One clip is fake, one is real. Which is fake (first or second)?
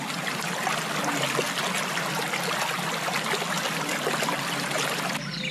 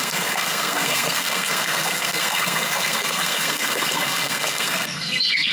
second